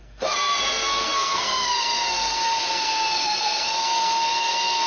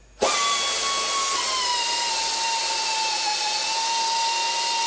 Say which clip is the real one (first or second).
second